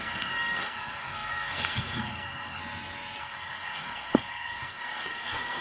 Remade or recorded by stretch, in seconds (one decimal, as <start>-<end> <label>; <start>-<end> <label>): 0.0-2.6 remade; 2.6-3.2 recorded; 3.2-5.6 remade